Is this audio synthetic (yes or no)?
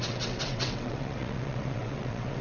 yes